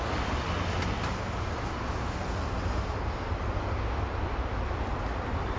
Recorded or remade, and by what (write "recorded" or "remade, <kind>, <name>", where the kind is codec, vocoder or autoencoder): recorded